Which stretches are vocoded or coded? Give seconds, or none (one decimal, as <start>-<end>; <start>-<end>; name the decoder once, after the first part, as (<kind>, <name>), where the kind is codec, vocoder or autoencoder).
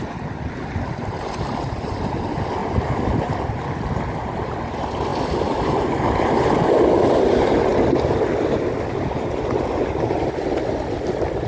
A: none